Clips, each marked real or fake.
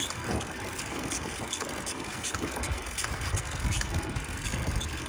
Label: fake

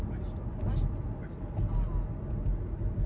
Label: real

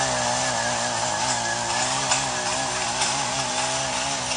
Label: real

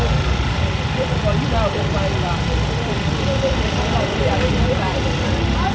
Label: fake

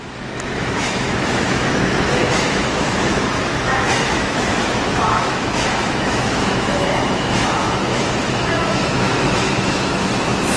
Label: fake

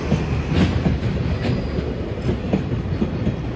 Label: real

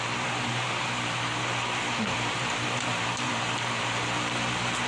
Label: fake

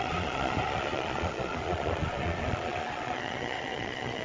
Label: fake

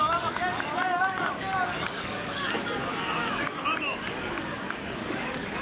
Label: fake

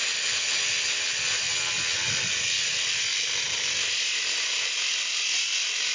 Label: real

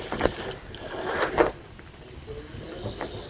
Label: real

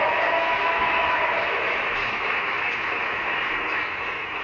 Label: fake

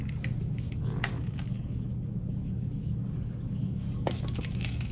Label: fake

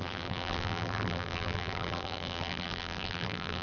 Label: fake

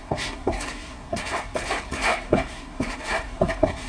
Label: fake